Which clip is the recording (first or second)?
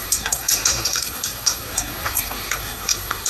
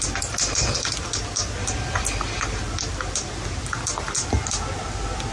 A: second